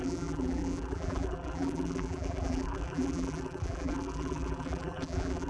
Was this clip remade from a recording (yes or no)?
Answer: yes